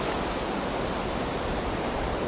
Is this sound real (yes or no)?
yes